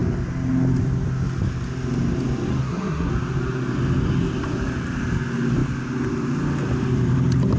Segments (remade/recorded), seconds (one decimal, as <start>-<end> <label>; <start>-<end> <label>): 0.0-2.5 recorded; 2.5-3.1 remade; 3.1-7.6 recorded